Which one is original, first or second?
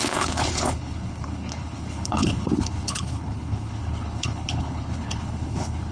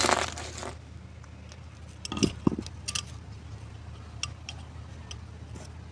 second